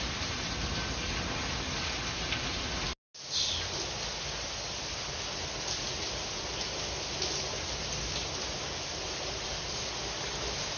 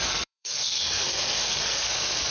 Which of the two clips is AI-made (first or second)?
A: second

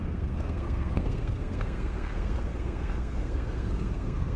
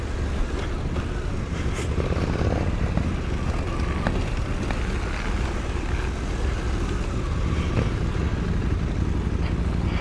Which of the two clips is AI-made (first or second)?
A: first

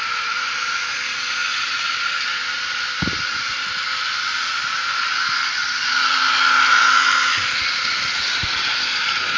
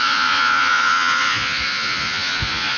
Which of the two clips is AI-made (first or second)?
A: second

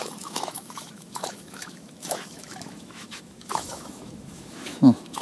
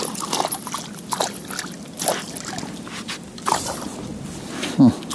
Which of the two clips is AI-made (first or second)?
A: first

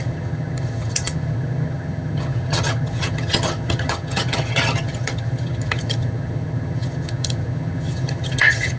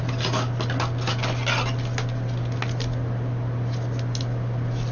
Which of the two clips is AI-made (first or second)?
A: first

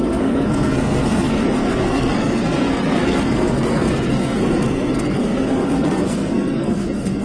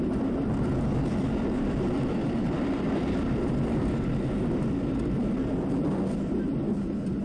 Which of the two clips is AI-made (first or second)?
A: first